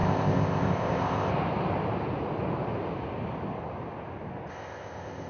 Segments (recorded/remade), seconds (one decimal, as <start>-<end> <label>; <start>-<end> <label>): 0.0-1.3 remade; 1.3-4.5 recorded; 4.5-5.3 remade